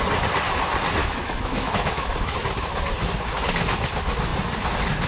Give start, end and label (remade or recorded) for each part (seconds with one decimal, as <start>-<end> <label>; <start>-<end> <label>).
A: 0.0-1.0 recorded; 1.0-2.4 remade; 2.4-5.1 recorded